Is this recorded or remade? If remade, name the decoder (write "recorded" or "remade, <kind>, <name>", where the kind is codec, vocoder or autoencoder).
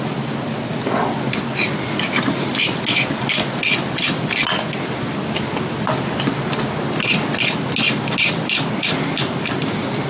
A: recorded